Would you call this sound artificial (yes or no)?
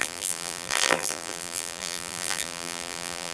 yes